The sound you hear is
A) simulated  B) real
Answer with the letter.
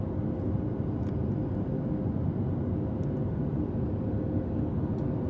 B